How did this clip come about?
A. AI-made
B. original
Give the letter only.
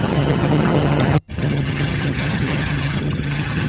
A